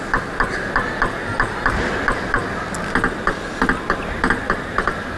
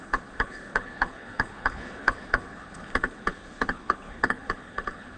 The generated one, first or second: second